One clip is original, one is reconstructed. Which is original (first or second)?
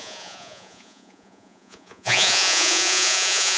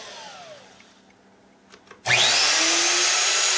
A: second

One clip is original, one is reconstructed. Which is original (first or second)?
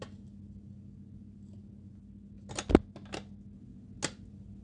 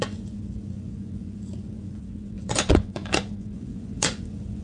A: first